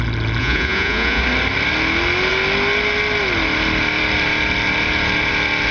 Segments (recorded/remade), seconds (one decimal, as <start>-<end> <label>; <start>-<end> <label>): 0.0-0.4 recorded; 0.4-1.2 remade; 1.2-5.7 recorded